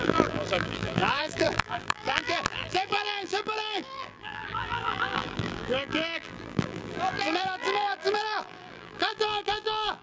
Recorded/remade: remade